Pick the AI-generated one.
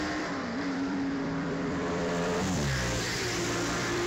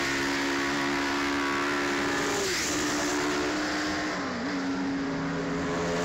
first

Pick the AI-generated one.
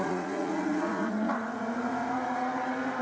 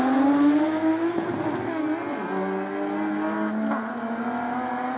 first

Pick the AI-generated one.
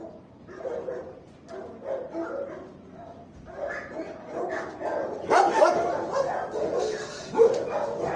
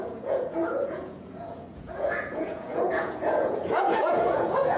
second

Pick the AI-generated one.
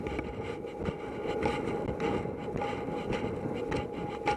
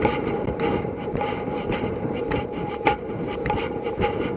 second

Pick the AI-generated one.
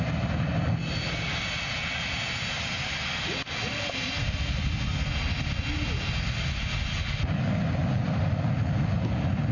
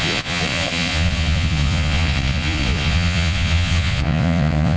second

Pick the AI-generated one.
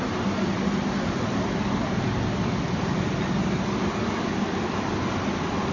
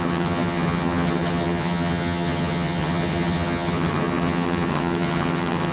second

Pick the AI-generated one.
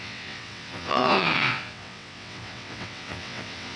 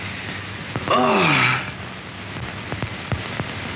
first